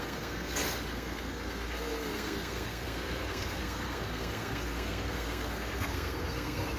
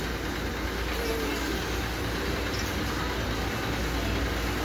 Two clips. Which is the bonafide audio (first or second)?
second